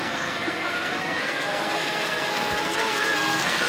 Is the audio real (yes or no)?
no